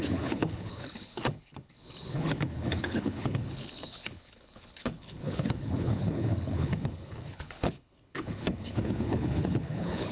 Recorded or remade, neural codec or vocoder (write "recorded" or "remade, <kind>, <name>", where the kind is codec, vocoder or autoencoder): remade, codec, HILCodec